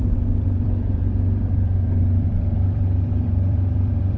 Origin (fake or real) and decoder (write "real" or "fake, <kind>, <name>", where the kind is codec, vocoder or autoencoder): fake, vocoder, BigVGAN v2